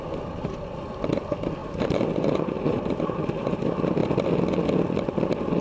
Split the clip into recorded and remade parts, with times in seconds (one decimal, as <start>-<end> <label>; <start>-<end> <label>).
0.0-1.6 recorded; 1.6-3.6 remade; 3.6-5.6 recorded